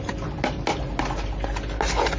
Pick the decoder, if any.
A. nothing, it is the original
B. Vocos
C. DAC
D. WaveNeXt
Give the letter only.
A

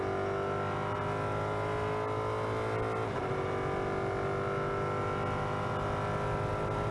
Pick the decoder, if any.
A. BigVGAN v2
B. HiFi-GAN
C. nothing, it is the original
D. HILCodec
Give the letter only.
C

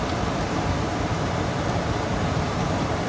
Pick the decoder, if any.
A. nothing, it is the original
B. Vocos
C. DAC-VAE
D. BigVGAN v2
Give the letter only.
D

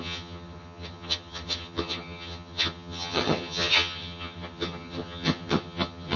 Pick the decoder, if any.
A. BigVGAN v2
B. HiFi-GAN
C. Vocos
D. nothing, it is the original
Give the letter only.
B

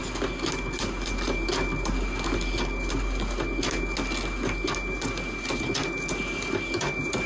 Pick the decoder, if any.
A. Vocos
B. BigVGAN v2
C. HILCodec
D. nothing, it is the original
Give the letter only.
D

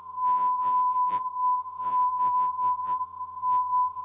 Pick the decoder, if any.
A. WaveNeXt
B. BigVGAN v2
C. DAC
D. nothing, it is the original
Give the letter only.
B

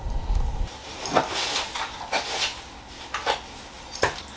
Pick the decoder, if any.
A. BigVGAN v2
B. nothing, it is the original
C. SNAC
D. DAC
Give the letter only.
B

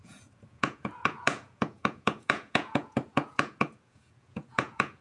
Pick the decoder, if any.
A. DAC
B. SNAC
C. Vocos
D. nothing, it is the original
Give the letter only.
C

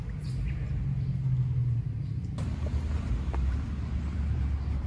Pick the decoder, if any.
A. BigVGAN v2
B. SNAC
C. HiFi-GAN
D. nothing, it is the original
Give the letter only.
D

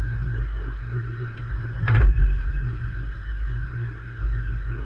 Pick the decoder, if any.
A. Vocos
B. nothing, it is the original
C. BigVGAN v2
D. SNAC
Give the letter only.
D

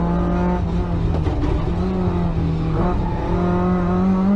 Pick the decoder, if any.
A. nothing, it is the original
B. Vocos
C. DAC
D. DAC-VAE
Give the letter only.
A